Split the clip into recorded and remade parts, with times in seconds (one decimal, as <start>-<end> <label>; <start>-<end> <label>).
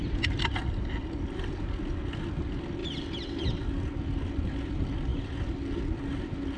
0.0-6.6 recorded